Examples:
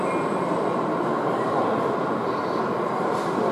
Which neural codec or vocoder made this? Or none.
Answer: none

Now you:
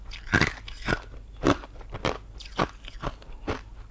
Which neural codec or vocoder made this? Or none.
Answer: none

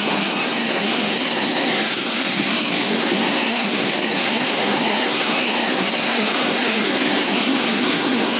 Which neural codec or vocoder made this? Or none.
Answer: codec, SNAC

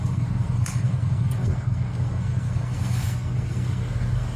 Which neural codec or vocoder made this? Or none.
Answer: codec, SNAC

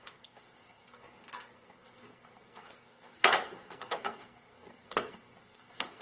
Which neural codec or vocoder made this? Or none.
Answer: codec, SNAC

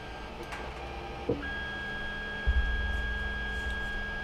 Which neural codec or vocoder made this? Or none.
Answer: none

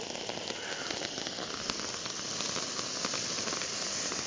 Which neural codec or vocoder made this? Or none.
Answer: none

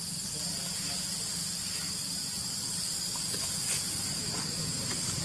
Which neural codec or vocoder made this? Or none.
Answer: none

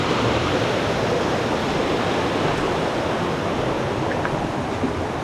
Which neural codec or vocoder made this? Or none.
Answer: none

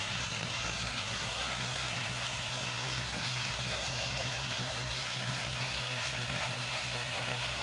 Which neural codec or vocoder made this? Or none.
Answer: codec, SNAC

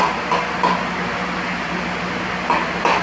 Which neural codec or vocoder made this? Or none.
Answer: none